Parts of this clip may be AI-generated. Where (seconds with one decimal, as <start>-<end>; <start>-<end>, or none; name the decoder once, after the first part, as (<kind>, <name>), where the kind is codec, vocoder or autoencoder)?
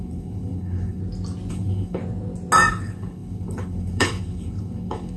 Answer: 0.0-1.0 (codec, HILCodec); 1.5-2.0; 2.7-5.2